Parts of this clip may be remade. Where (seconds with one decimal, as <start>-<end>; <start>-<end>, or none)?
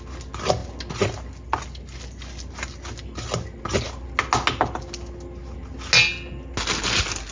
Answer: none